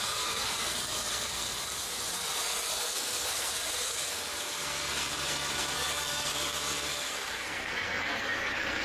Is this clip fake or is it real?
fake